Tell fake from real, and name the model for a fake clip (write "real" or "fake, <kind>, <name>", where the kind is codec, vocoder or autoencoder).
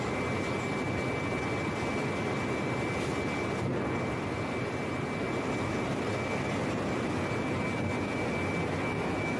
real